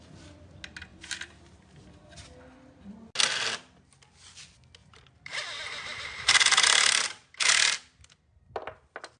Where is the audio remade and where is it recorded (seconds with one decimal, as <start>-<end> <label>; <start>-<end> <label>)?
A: 0.0-0.9 recorded; 0.9-1.4 remade; 1.4-4.8 recorded; 4.8-6.9 remade; 6.9-9.2 recorded